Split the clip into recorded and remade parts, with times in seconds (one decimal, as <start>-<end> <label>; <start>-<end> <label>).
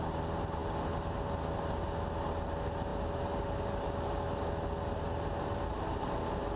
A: 0.0-6.6 recorded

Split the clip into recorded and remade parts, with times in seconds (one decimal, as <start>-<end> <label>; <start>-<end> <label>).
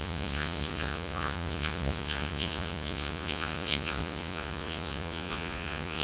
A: 0.0-6.0 remade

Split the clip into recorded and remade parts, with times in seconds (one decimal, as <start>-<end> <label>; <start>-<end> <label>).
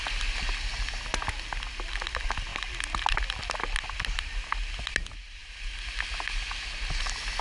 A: 0.0-7.4 recorded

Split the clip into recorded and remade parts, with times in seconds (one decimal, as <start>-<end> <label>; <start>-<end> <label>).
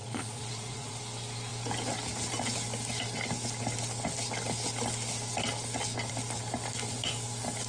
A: 0.0-1.0 remade; 1.0-7.7 recorded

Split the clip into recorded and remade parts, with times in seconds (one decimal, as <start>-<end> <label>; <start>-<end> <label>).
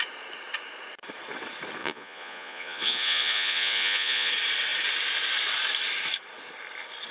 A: 0.0-1.8 recorded; 1.8-4.3 remade; 4.3-7.1 recorded